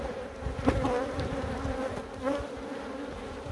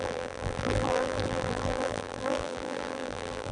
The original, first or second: first